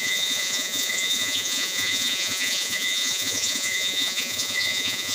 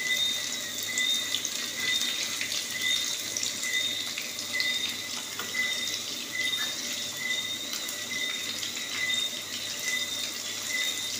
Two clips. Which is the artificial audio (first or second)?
first